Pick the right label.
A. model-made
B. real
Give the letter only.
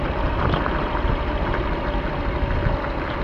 B